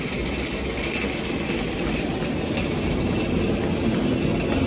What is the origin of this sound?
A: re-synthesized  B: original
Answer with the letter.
B